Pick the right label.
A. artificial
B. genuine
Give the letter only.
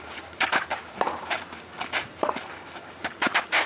A